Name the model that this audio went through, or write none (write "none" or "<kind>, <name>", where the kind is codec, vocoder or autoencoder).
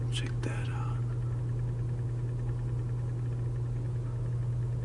none